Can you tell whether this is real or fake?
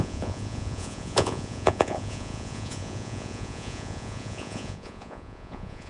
fake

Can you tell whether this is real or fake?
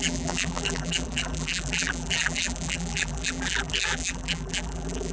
fake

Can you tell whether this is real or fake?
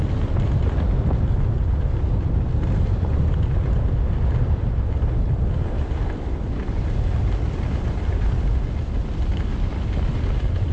real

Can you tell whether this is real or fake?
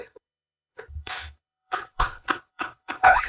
fake